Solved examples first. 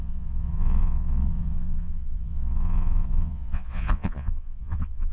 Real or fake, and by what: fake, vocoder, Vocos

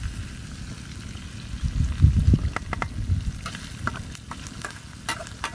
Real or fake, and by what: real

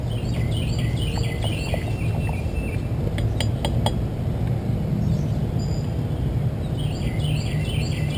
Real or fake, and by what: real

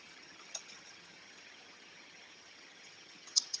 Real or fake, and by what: fake, vocoder, HiFi-GAN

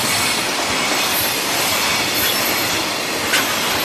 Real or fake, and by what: real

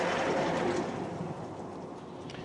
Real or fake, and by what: real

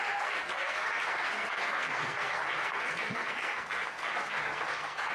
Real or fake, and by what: fake, codec, SNAC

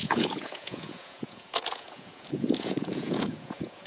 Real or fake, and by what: fake, vocoder, Vocos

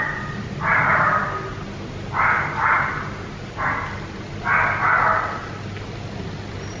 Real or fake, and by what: real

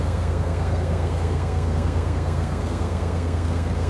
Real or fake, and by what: fake, codec, SNAC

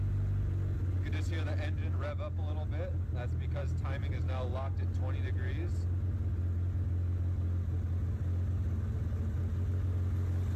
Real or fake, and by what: real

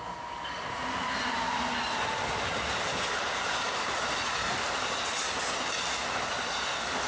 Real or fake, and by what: real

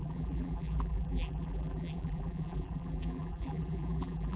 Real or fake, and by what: fake, vocoder, BigVGAN v2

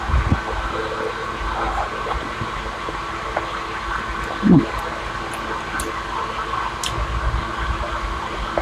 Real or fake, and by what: real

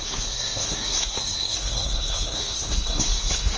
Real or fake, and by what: fake, codec, SNAC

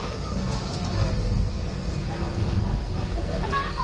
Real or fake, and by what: fake, codec, SNAC